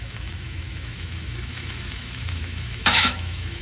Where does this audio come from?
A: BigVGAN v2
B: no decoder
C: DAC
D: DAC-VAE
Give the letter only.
D